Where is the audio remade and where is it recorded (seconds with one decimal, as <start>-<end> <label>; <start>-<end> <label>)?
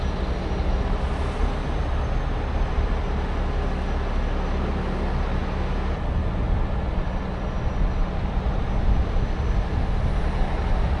0.0-11.0 recorded